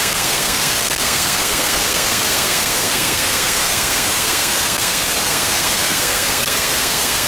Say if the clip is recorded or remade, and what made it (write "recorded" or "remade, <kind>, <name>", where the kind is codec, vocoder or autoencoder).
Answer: remade, codec, SNAC